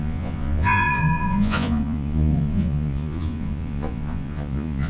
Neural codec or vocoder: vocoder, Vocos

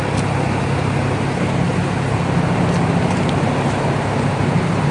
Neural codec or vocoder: none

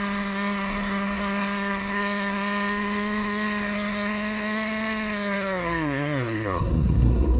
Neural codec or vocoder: codec, SNAC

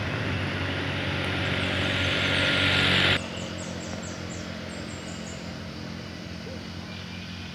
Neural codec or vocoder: none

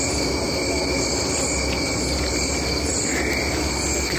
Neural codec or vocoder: none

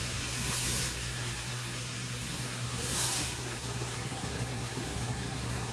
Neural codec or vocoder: codec, SNAC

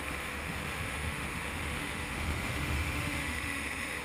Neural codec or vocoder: autoencoder, DAC-VAE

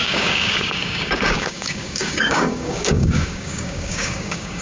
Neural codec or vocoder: codec, DAC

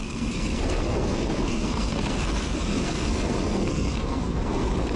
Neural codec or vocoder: codec, SNAC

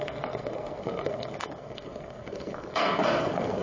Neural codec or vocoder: codec, SNAC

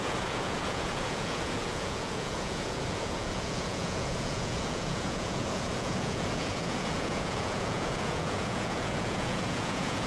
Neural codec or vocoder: vocoder, Vocos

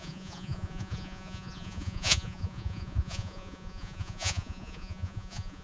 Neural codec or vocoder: vocoder, Vocos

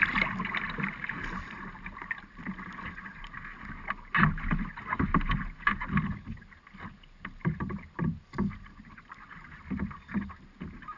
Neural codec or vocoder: none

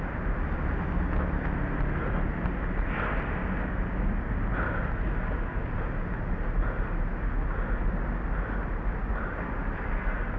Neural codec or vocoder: none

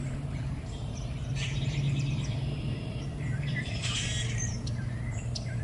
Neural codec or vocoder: vocoder, BigVGAN v2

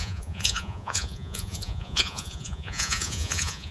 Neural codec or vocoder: vocoder, Vocos